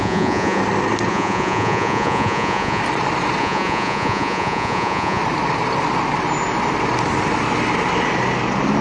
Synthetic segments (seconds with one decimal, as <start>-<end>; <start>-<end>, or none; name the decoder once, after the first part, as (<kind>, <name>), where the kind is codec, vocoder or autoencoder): 0.0-0.6 (vocoder, Vocos); 1.1-2.8; 3.4-5.2